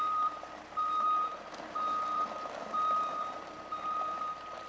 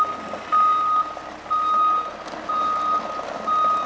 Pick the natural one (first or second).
second